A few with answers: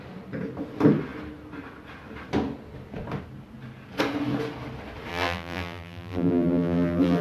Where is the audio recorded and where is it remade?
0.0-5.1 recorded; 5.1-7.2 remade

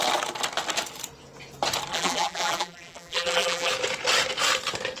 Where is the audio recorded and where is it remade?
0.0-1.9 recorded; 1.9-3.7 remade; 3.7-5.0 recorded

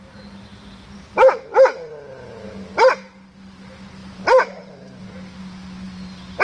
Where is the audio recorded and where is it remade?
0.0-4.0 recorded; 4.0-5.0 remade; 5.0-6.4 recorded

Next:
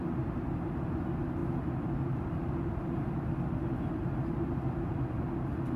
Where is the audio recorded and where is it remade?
0.0-5.8 recorded